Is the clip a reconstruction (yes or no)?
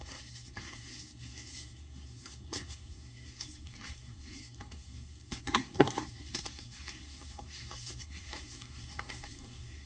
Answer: yes